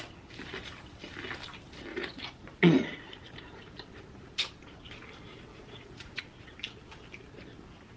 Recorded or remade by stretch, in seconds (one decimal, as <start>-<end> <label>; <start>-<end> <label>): 0.0-1.9 recorded; 1.9-3.0 remade; 3.0-5.5 recorded; 5.5-6.2 remade; 6.2-8.0 recorded